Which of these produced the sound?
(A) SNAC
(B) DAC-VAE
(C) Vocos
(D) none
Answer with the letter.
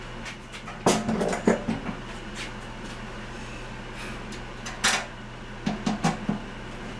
D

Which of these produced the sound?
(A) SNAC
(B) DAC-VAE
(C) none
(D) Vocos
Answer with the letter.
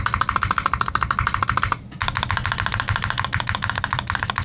C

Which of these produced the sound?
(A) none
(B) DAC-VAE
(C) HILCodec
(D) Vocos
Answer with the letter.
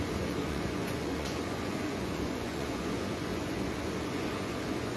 D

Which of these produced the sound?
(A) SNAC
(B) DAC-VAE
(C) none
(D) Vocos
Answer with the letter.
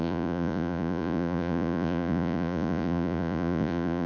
D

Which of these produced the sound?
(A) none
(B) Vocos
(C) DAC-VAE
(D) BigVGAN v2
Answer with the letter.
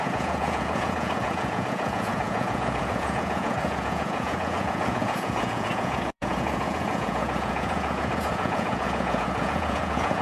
B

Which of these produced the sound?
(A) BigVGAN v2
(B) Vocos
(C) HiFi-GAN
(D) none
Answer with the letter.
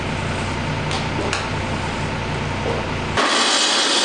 D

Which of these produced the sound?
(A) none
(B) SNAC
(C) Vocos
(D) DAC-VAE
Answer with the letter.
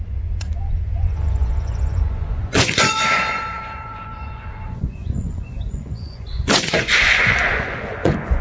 C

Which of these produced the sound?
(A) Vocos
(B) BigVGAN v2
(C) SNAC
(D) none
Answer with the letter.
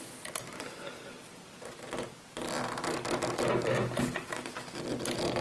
D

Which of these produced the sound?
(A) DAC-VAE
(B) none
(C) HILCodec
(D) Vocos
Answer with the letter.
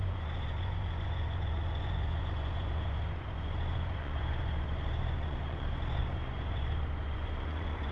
D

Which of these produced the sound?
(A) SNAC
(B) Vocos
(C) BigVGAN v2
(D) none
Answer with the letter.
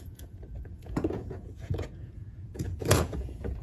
B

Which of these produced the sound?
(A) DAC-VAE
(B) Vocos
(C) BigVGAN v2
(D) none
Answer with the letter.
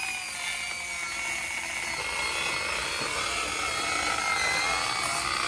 D